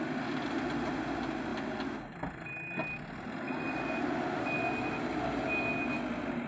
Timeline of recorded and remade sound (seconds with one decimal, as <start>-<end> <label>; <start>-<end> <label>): 0.0-6.5 recorded